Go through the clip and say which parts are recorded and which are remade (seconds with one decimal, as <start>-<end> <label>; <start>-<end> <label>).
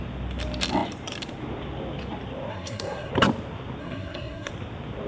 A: 0.0-2.5 recorded; 2.5-3.1 remade; 3.1-3.8 recorded; 3.8-4.5 remade; 4.5-5.1 recorded